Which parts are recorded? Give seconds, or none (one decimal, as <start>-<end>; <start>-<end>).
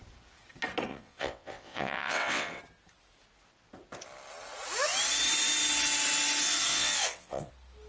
0.0-0.9; 2.6-6.7; 7.5-7.9